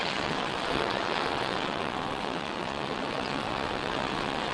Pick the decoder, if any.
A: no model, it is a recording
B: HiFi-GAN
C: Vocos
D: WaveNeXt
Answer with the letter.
D